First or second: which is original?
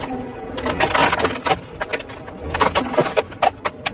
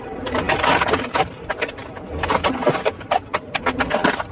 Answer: first